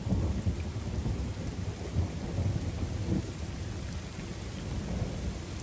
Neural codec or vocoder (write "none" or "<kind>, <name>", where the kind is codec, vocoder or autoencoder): none